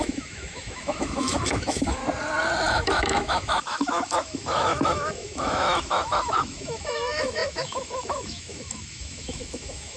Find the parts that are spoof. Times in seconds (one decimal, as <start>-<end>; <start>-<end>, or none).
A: 0.0-2.0; 2.7-10.0